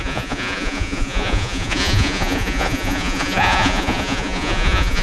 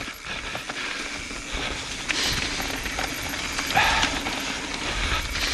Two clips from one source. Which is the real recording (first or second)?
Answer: second